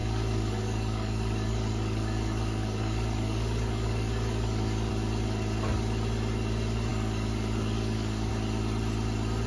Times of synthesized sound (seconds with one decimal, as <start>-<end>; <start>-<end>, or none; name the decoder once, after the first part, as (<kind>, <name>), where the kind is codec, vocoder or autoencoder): 0.0-4.9 (codec, DAC); 6.9-8.3